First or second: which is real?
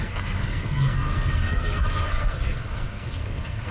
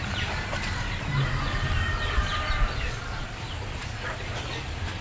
second